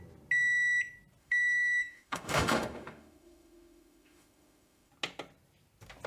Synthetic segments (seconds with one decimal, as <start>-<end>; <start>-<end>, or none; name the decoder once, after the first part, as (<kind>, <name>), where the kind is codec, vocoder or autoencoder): 1.2-4.9 (autoencoder, DAC-VAE)